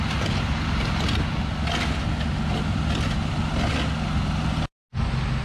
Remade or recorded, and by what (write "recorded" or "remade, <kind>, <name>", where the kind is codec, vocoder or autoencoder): recorded